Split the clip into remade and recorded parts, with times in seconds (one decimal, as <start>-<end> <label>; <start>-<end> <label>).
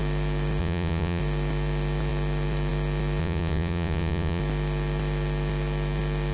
0.0-0.6 recorded; 0.6-1.2 remade; 1.2-3.2 recorded; 3.2-4.4 remade; 4.4-6.3 recorded